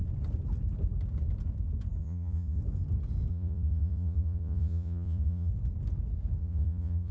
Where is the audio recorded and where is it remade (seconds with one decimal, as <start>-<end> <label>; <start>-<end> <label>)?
0.0-2.0 recorded; 2.0-2.6 remade; 2.6-3.3 recorded; 3.3-5.5 remade; 5.5-6.4 recorded; 6.4-7.1 remade

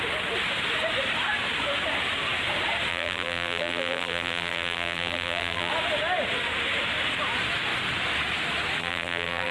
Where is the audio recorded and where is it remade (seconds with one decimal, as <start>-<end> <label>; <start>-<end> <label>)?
0.0-2.9 recorded; 2.9-5.7 remade; 5.7-8.8 recorded; 8.8-9.5 remade